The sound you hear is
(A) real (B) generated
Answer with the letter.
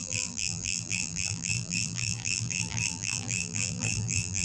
B